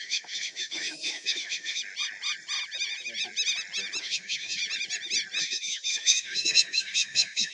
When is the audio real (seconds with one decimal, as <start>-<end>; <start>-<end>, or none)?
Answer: 1.8-4.0; 4.6-5.4